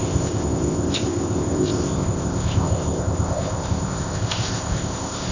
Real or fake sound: fake